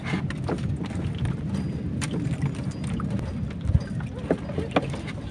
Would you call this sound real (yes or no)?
yes